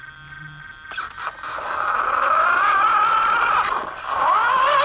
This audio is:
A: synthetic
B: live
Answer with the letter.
B